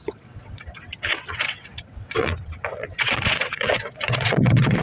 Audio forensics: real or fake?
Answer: fake